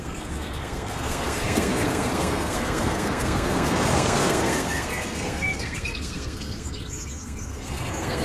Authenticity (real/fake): fake